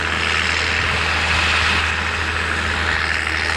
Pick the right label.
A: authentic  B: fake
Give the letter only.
A